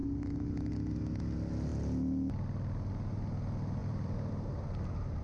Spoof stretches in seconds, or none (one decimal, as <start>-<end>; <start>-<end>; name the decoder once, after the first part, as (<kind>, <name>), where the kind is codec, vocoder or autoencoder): 3.8-4.3 (vocoder, BigVGAN v2)